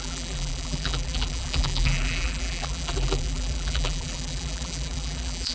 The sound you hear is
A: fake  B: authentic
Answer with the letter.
A